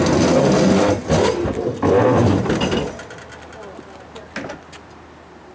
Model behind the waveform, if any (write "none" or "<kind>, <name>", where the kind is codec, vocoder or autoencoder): none